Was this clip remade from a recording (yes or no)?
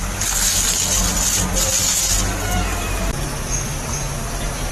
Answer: no